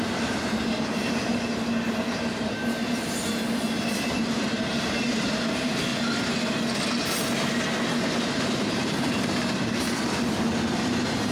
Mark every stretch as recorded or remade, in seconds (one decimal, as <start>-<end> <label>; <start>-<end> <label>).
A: 0.0-5.9 remade; 5.9-8.4 recorded; 8.4-11.3 remade